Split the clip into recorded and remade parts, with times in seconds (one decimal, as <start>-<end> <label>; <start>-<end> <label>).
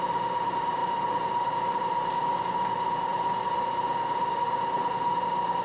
0.0-5.6 recorded